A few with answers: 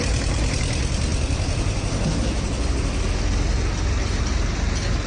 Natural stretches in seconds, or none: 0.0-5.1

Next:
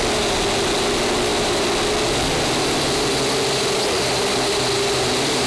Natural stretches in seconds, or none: 0.0-5.5

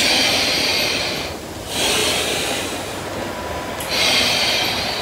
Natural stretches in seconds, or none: 0.0-5.0